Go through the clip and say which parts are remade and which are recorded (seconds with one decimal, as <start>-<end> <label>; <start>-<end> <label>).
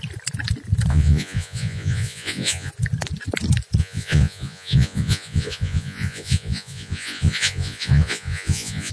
0.0-0.9 recorded; 0.9-2.7 remade; 2.7-3.8 recorded; 3.8-8.9 remade